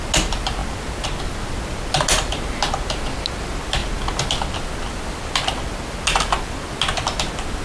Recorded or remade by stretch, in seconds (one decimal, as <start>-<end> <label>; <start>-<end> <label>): 0.0-7.6 recorded